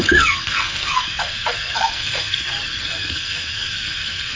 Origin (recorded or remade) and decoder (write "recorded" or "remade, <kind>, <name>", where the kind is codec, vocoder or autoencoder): remade, codec, SNAC